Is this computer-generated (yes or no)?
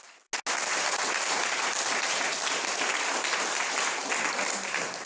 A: no